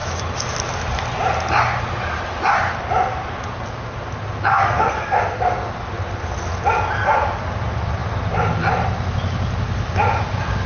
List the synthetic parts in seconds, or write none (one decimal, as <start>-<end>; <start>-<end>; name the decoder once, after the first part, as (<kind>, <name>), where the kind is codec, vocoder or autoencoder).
4.5-5.4 (codec, SNAC)